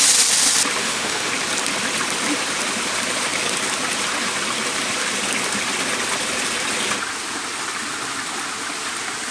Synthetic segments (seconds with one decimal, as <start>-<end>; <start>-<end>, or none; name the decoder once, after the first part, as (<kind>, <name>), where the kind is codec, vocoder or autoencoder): 0.8-1.3 (autoencoder, DAC-VAE)

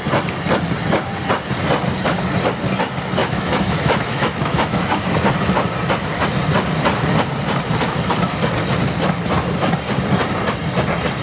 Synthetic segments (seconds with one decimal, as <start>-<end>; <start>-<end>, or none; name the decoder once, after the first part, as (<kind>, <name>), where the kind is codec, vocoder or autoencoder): 3.2-5.3 (autoencoder, DAC-VAE)